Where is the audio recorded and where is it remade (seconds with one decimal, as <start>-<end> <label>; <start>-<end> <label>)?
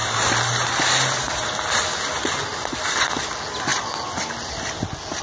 0.0-5.2 recorded